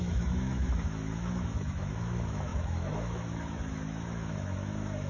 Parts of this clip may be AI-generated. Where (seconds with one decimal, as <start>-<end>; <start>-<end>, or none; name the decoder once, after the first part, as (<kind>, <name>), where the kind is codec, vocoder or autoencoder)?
0.0-5.1 (autoencoder, DAC-VAE)

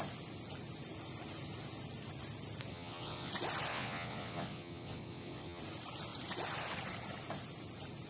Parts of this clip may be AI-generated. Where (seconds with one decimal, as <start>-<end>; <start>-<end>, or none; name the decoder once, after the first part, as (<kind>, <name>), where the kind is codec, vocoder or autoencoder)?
2.7-3.3 (vocoder, WaveNeXt); 3.7-5.6

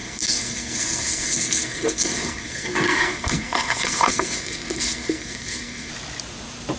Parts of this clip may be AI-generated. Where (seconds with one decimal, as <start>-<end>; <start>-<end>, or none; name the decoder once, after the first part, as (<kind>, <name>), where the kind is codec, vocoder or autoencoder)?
0.0-5.9 (codec, SNAC)

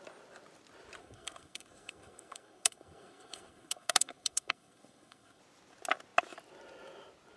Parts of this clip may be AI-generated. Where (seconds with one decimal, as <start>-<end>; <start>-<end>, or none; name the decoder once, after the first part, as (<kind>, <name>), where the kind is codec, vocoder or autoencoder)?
1.0-5.4 (codec, SNAC)

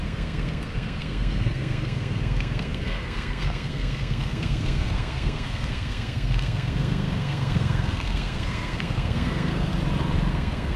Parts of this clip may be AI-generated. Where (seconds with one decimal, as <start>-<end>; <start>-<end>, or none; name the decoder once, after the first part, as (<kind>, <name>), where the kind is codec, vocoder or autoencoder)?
0.0-9.7 (codec, SNAC); 10.3-10.8

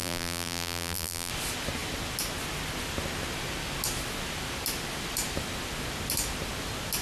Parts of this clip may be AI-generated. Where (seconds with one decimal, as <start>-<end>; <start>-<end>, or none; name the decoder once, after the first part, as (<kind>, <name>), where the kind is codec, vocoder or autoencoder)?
0.0-1.3 (vocoder, BigVGAN v2)

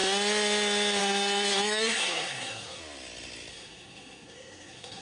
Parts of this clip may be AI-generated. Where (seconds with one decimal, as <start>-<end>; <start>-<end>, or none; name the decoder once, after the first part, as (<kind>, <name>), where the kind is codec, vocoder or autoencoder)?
1.0-2.8 (codec, SNAC); 3.5-5.0